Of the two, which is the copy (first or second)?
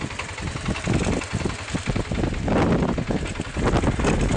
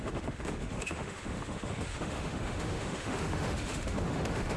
second